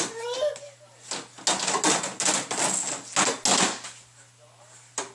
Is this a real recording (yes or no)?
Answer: yes